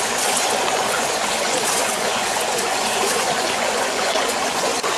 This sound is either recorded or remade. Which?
remade